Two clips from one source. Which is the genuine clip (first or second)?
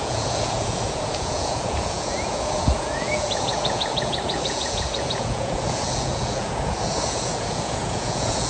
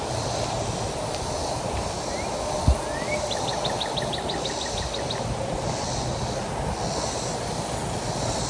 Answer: second